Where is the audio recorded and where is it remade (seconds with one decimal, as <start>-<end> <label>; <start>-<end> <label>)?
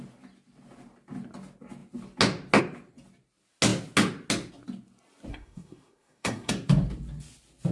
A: 0.0-5.3 recorded; 5.3-6.5 remade; 6.5-7.7 recorded